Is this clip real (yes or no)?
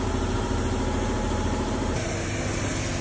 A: yes